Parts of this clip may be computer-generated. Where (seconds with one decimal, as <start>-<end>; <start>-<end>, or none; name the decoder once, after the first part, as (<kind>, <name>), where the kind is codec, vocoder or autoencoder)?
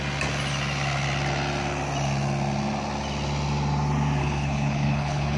4.2-5.4 (codec, HILCodec)